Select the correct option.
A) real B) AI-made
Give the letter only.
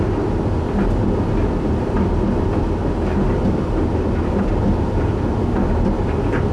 A